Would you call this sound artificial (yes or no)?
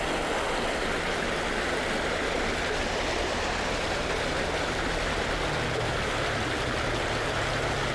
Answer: no